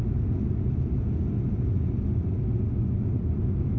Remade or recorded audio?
recorded